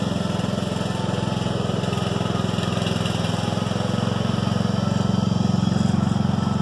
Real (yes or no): yes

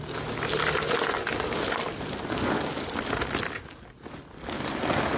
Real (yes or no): yes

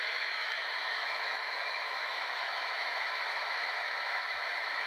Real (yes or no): no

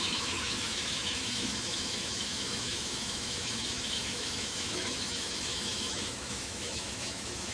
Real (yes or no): no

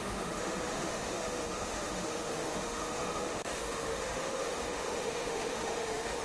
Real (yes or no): no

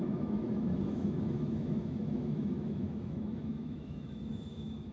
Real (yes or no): no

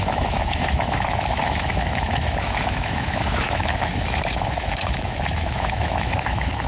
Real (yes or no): no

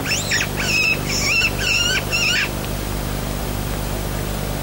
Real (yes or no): yes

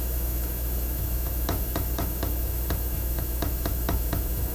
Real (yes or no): no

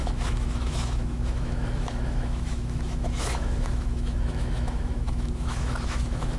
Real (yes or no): no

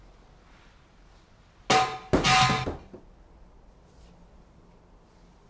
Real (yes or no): yes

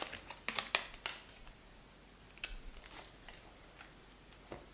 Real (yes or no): yes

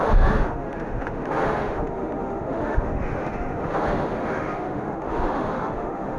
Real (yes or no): no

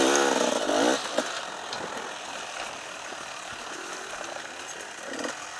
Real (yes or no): yes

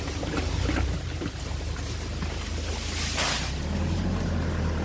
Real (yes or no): yes